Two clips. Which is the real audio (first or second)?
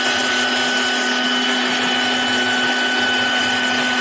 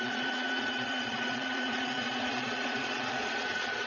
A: first